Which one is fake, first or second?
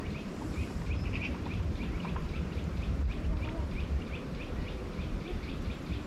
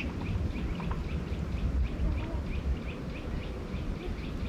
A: first